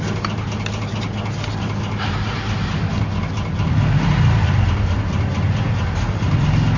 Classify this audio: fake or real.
real